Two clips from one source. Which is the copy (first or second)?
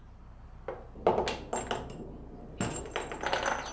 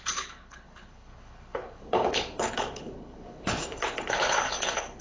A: second